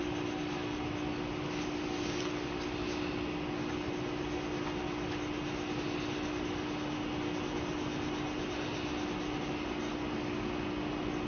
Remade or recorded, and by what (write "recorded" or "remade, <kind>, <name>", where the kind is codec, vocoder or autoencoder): recorded